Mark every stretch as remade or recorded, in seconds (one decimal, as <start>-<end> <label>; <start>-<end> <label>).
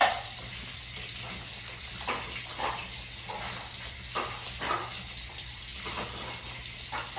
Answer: 0.0-1.1 remade; 1.1-5.3 recorded; 5.3-5.7 remade; 5.7-7.2 recorded